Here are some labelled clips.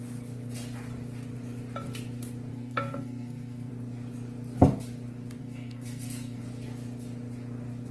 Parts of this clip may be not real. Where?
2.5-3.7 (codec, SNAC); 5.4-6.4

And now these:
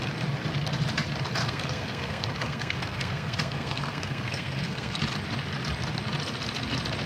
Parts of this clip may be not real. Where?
1.4-5.0 (codec, SNAC)

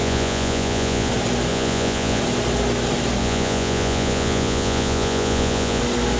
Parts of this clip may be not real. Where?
0.0-1.1 (vocoder, Vocos); 1.5-2.2; 3.2-5.8

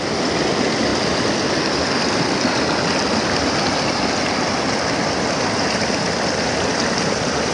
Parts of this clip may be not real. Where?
none